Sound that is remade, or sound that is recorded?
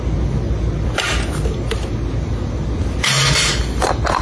recorded